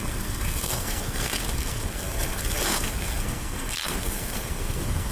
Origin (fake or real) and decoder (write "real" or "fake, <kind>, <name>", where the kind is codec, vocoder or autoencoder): fake, codec, SNAC